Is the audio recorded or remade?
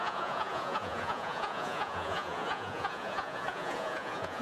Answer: remade